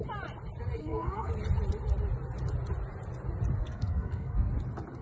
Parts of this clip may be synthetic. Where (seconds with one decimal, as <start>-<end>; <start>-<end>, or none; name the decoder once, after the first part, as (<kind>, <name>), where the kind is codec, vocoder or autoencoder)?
0.8-1.3 (codec, SNAC); 3.6-4.5